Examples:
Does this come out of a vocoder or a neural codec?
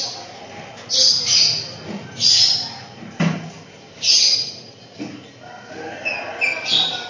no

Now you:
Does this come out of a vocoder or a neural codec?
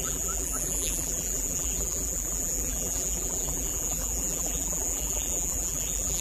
yes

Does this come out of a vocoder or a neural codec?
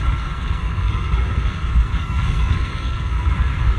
yes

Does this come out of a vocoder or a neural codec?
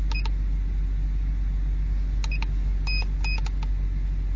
no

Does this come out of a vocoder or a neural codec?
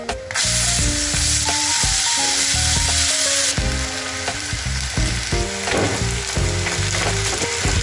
no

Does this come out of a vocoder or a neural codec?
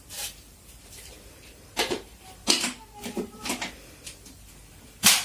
yes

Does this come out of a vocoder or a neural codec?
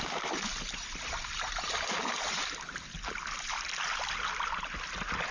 no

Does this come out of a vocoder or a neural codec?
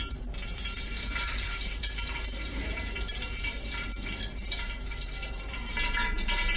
yes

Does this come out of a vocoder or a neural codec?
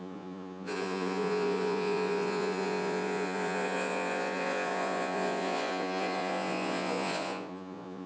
yes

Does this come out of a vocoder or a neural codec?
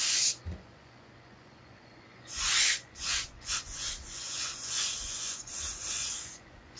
yes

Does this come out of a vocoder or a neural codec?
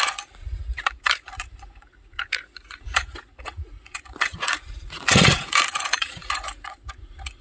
yes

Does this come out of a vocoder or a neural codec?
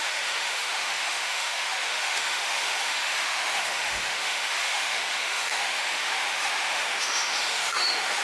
yes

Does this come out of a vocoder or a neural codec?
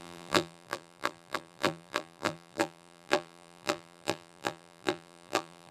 yes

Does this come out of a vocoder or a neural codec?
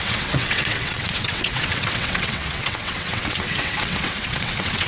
yes